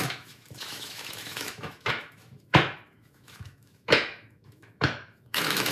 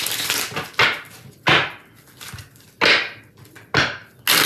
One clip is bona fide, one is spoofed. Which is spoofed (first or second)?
first